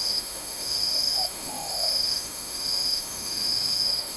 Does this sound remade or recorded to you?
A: remade